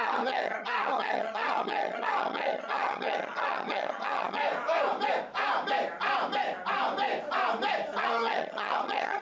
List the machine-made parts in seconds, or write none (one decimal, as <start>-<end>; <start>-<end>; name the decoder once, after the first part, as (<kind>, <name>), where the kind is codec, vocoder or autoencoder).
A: 0.0-4.4 (vocoder, HiFi-GAN); 8.0-9.2